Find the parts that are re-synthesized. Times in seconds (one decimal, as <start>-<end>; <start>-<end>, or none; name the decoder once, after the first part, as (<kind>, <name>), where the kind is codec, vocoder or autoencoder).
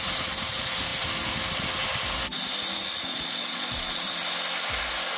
3.1-4.0 (vocoder, Vocos)